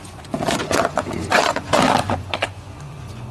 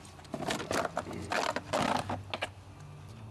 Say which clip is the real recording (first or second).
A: second